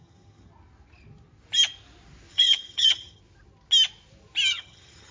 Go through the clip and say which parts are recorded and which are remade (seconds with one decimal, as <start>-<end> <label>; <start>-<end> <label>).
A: 0.0-0.5 remade; 0.5-2.3 recorded; 2.3-3.2 remade; 3.2-4.5 recorded; 4.5-5.1 remade